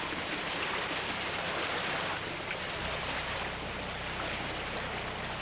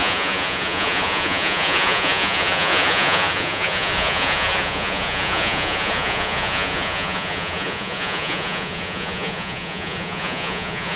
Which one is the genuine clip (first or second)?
first